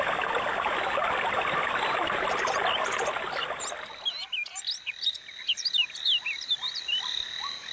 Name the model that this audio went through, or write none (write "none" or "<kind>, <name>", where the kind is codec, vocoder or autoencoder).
none